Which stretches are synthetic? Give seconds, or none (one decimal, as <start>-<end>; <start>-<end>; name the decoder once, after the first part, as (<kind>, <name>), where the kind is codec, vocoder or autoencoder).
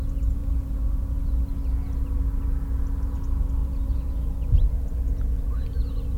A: 0.4-1.2 (vocoder, Vocos); 3.6-4.5